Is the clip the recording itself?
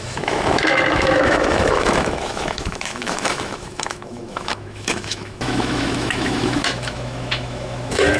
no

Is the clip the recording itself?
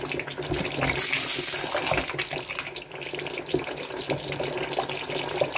yes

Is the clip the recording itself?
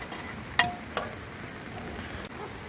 yes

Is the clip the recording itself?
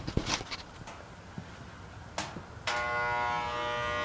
yes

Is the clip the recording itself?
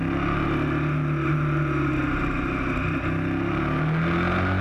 yes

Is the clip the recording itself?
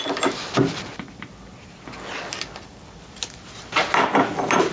yes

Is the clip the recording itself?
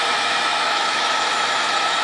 no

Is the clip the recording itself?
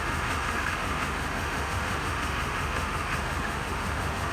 no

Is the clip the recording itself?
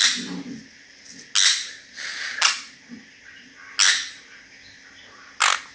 yes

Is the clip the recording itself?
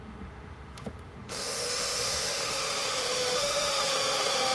no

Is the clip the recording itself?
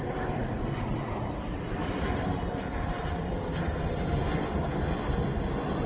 yes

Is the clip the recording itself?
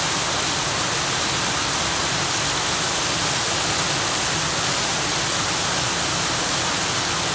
yes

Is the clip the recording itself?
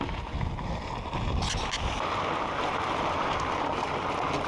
yes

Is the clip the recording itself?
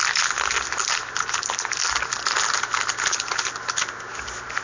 yes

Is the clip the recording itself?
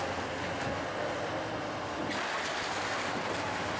yes